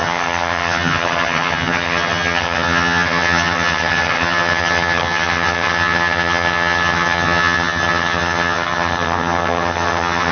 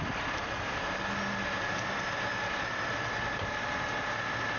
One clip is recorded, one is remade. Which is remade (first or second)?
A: first